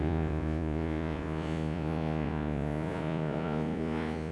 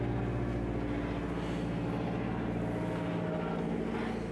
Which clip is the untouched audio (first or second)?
second